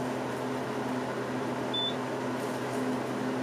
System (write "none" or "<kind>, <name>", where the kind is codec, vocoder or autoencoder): none